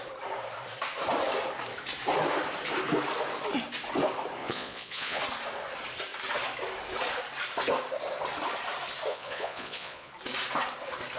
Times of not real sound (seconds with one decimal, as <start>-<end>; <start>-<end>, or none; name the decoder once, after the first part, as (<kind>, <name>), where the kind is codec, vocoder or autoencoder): 4.4-5.2 (vocoder, Vocos); 9.1-10.1